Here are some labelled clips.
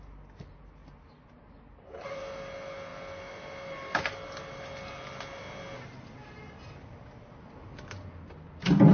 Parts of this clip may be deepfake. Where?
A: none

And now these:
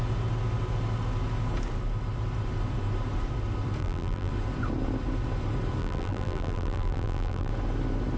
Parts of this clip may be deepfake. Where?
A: 3.8-4.3 (vocoder, BigVGAN v2); 5.8-7.5

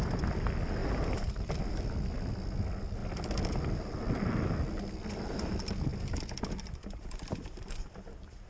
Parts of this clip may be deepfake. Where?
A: 0.8-2.1 (vocoder, BigVGAN v2); 3.0-5.5; 5.9-7.7